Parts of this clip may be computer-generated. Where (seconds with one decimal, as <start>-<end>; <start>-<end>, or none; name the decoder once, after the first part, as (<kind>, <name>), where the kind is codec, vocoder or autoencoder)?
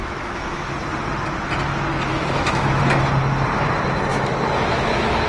0.0-0.7 (autoencoder, DAC-VAE); 2.1-2.8; 4.1-5.3